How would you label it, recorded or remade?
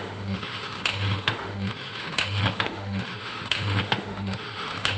remade